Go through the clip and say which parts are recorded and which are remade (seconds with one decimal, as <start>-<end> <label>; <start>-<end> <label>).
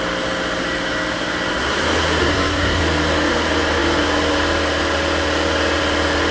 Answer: 0.0-2.2 recorded; 2.2-2.8 remade; 2.8-6.3 recorded